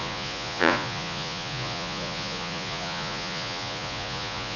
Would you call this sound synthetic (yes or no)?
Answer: yes